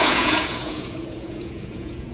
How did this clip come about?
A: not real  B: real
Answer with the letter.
A